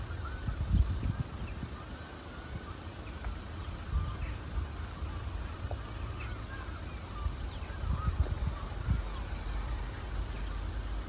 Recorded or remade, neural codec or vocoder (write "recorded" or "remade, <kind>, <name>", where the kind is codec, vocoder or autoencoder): recorded